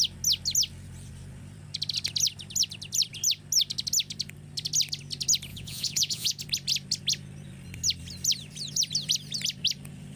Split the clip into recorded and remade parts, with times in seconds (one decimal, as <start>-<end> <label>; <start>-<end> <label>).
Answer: 0.0-5.5 recorded; 5.5-6.4 remade; 6.4-10.2 recorded